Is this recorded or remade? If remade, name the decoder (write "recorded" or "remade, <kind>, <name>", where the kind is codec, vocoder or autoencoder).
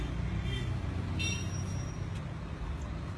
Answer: recorded